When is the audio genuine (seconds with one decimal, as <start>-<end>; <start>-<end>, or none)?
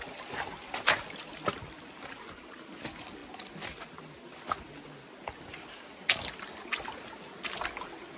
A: 0.0-8.2